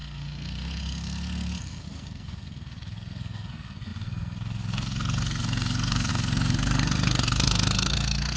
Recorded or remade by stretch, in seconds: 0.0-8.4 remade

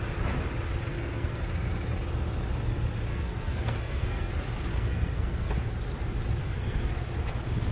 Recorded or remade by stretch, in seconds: 0.0-0.9 recorded; 0.9-1.4 remade; 1.4-3.1 recorded; 3.1-4.3 remade; 4.3-4.7 recorded; 4.7-5.5 remade; 5.5-6.4 recorded; 6.4-6.9 remade; 6.9-7.7 recorded

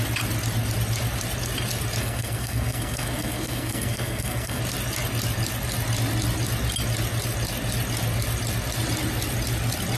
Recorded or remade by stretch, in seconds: 0.0-2.0 recorded; 2.0-4.6 remade; 4.6-10.0 recorded

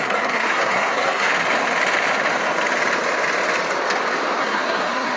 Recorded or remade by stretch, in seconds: 0.0-1.3 remade; 1.3-4.4 recorded; 4.4-5.2 remade

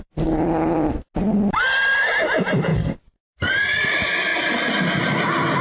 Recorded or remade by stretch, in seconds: 0.0-5.6 recorded

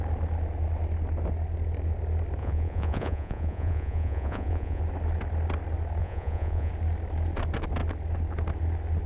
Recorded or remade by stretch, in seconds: 0.0-2.4 recorded; 2.4-4.8 remade; 4.8-6.0 recorded; 6.0-6.7 remade; 6.7-9.1 recorded

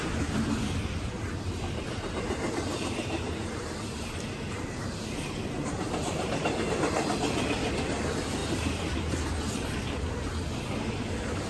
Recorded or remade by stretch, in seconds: 0.0-2.7 recorded; 2.7-6.7 remade; 6.7-8.4 recorded; 8.4-9.3 remade; 9.3-11.5 recorded

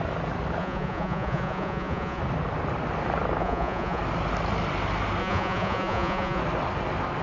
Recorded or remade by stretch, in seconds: 0.0-0.6 recorded; 0.6-2.2 remade; 2.2-3.4 recorded; 3.4-4.0 remade; 4.0-5.2 recorded; 5.2-6.4 remade; 6.4-7.2 recorded